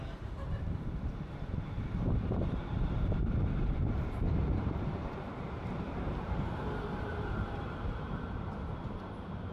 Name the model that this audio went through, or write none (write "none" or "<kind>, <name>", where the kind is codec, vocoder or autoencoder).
vocoder, BigVGAN v2